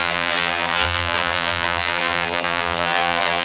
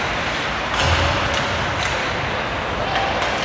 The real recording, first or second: second